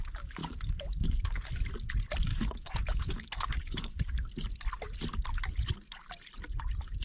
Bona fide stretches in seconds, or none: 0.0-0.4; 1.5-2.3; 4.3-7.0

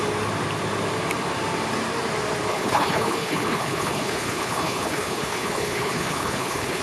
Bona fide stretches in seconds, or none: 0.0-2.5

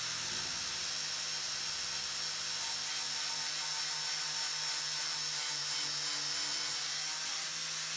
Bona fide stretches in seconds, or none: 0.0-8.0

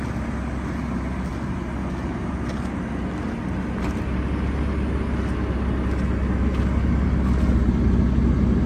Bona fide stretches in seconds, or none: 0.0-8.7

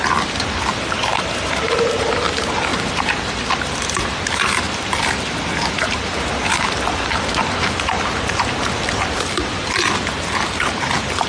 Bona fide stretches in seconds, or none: 0.0-1.0; 2.1-2.7; 6.7-11.3

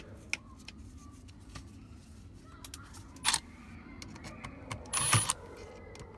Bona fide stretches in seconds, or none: 0.0-6.2